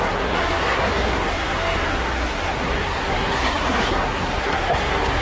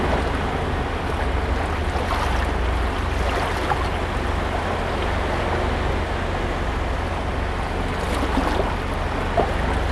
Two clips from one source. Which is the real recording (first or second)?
second